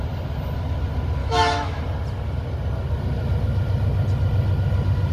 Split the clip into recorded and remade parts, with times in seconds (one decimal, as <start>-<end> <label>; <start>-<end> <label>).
0.0-1.2 recorded; 1.2-1.8 remade; 1.8-5.1 recorded